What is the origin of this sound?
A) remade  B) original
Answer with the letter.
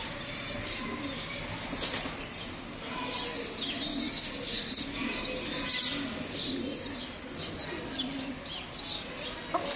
B